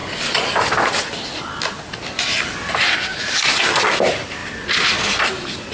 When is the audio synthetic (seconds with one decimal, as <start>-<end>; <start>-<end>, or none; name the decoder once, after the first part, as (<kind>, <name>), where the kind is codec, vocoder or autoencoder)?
none